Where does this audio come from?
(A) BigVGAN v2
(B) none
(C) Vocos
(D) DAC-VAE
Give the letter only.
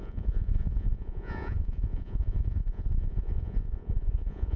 C